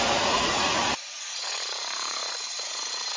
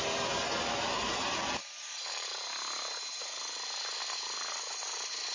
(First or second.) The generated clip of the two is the first